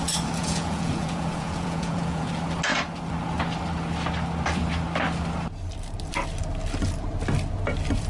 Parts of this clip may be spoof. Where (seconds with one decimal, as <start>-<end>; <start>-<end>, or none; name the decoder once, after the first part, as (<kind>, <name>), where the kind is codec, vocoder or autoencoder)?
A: 0.4-2.3 (vocoder, Vocos)